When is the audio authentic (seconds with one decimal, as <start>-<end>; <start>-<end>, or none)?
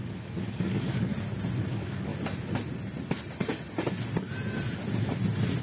1.1-1.7; 2.1-5.6